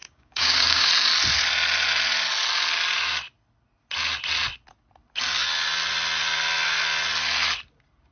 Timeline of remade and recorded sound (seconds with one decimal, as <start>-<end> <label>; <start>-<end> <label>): 0.0-0.9 remade; 0.9-8.1 recorded